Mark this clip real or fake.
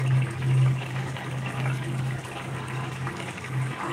fake